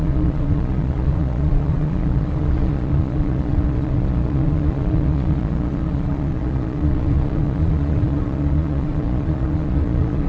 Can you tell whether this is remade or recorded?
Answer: remade